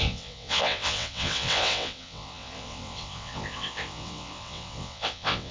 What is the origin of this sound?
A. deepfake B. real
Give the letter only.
A